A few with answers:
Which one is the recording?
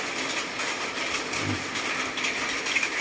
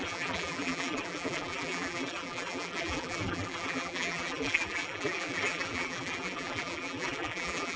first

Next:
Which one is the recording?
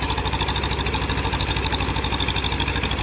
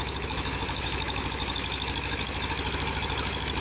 first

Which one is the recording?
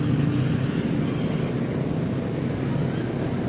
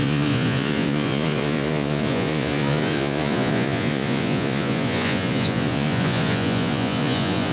first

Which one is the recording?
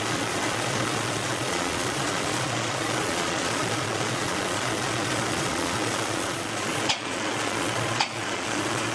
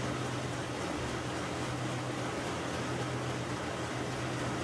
second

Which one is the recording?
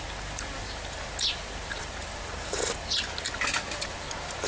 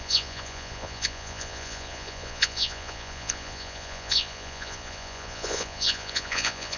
first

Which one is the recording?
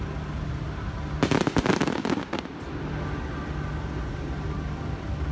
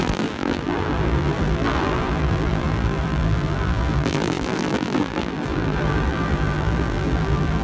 first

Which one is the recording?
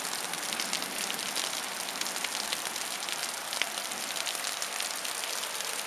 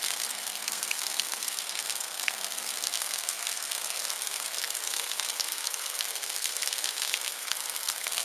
first